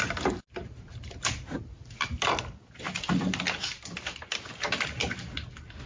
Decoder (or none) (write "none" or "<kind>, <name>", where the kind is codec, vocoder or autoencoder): none